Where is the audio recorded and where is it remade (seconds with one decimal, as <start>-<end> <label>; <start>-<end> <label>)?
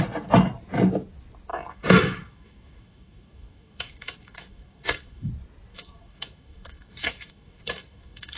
0.0-1.5 recorded; 1.5-5.3 remade; 5.3-5.7 recorded; 5.7-8.4 remade